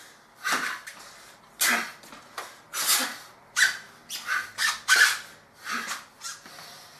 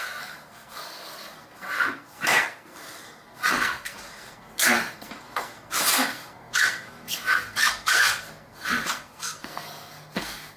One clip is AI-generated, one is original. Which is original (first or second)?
first